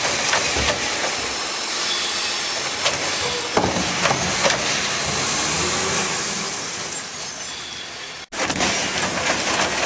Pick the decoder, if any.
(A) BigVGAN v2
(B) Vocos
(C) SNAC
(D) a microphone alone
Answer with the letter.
D